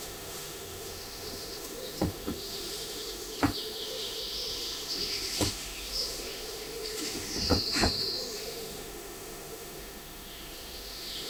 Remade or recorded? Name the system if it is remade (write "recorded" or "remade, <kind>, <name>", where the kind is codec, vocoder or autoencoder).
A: remade, autoencoder, DAC-VAE